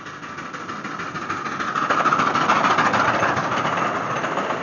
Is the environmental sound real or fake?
real